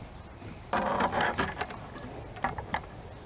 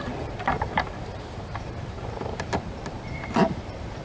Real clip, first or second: first